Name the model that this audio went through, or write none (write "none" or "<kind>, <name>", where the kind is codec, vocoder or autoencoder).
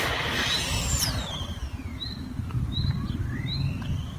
none